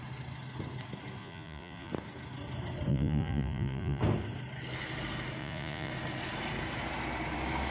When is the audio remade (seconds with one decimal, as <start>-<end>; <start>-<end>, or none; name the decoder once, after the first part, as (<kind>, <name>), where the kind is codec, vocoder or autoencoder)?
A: 1.2-1.9 (vocoder, Vocos); 2.9-4.0; 5.4-5.9